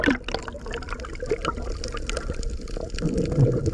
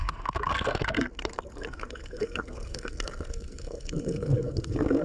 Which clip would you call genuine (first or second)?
first